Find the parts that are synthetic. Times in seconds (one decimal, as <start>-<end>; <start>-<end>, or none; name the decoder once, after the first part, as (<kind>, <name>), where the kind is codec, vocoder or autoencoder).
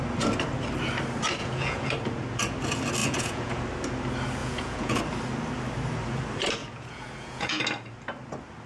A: 1.4-1.9 (vocoder, Vocos); 3.0-3.6; 4.4-5.0; 6.6-7.6